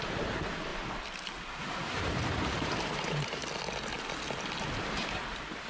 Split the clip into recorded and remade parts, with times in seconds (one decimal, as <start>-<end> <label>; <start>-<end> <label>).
0.0-0.7 remade; 0.7-1.6 recorded; 1.6-3.4 remade; 3.4-4.8 recorded; 4.8-5.7 remade